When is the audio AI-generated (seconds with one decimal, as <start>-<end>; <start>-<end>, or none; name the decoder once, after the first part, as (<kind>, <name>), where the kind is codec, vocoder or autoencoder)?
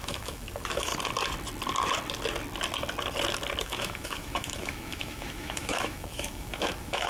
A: 0.0-0.9 (autoencoder, DAC-VAE); 3.6-7.1